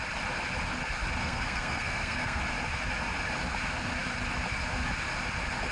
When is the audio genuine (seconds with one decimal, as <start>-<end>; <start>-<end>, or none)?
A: 0.0-1.2; 2.4-5.7